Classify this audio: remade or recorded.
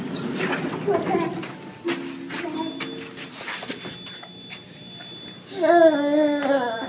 recorded